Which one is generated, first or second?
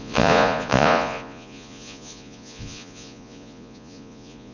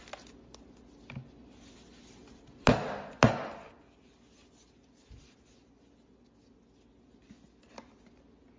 first